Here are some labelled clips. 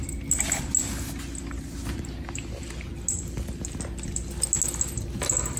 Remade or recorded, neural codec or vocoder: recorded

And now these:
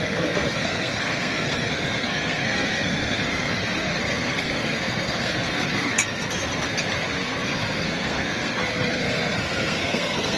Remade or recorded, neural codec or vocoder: remade, codec, SNAC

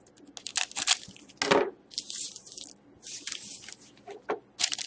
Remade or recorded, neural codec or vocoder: recorded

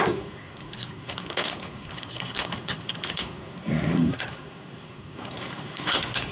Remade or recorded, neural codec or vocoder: remade, codec, SNAC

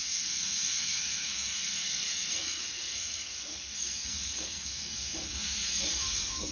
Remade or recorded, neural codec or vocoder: remade, codec, SNAC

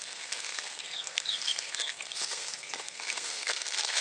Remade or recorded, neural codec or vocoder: remade, codec, SNAC